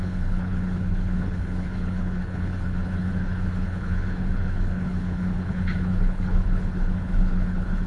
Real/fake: fake